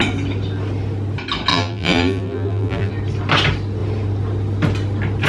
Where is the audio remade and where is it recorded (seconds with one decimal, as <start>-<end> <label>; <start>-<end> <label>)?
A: 0.0-1.5 recorded; 1.5-2.9 remade; 2.9-5.3 recorded